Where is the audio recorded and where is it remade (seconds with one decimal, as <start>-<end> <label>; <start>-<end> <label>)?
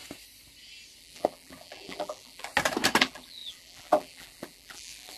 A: 0.0-1.0 recorded; 1.0-2.5 remade; 2.5-3.0 recorded; 3.0-5.2 remade